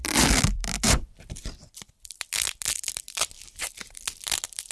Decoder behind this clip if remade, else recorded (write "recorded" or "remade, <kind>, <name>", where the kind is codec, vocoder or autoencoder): remade, vocoder, BigVGAN v2